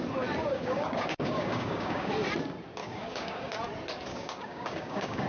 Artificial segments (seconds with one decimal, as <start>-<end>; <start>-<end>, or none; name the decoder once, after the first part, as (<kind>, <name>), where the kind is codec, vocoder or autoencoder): 0.4-2.1 (codec, DAC); 2.8-3.5; 4.1-5.3